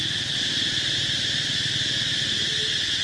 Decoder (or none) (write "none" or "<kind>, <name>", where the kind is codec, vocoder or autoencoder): none